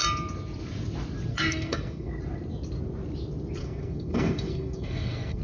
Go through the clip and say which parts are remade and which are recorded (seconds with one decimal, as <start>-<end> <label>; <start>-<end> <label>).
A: 0.0-1.3 recorded; 1.3-2.1 remade; 2.1-3.6 recorded; 3.6-5.4 remade